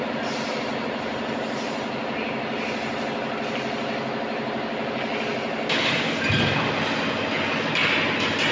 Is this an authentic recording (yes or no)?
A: yes